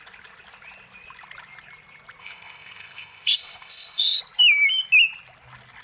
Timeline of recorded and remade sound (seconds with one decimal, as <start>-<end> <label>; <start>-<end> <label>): 0.0-2.2 recorded; 2.2-4.2 remade; 4.2-5.8 recorded